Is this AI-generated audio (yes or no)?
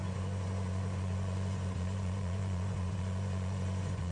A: yes